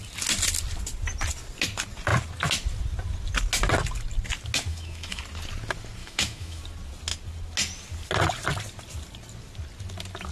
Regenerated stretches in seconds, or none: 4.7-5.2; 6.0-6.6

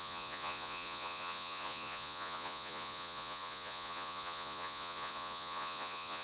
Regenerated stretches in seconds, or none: 0.0-6.2

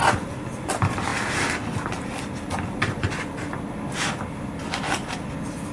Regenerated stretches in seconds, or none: none

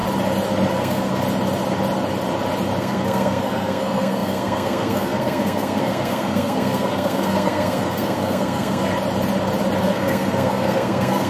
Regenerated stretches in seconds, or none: 0.7-1.1; 2.8-8.9; 9.8-11.3

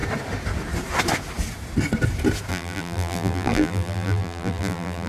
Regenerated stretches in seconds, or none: 2.5-5.1

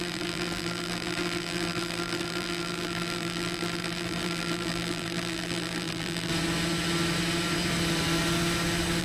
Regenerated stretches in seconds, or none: 0.0-6.3